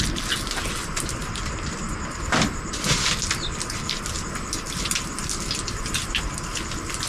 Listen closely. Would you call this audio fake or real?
fake